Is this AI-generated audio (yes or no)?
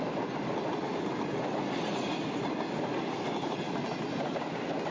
no